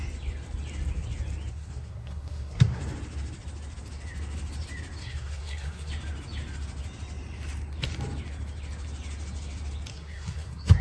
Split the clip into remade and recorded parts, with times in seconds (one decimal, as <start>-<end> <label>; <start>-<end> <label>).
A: 0.0-1.5 recorded; 1.5-2.8 remade; 2.8-5.0 recorded; 5.0-5.9 remade; 5.9-9.9 recorded; 9.9-10.8 remade